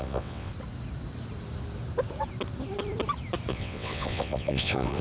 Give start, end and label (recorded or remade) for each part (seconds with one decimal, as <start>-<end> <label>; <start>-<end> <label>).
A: 0.0-0.5 remade; 0.5-3.5 recorded; 3.5-5.0 remade